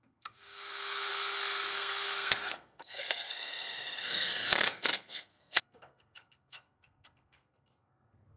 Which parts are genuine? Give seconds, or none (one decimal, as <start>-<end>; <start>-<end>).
none